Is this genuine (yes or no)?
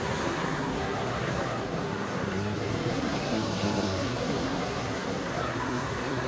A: no